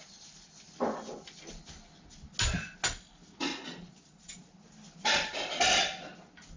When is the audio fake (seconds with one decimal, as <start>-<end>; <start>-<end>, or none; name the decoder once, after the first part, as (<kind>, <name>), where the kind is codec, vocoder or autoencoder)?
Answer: 3.5-4.5 (vocoder, Vocos)